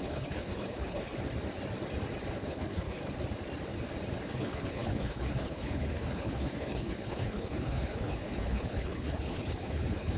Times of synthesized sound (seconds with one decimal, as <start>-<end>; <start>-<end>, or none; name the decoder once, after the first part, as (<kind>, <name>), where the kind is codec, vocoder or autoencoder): 0.0-1.1 (codec, HILCodec); 2.3-3.0; 4.3-10.2